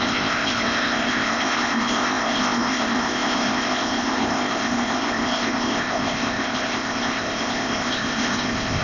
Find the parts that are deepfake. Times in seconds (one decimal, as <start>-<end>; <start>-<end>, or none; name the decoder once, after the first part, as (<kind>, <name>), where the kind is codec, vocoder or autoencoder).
0.0-8.8 (codec, ZipCodec)